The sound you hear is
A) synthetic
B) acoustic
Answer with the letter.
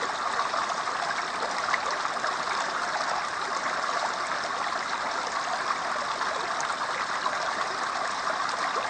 B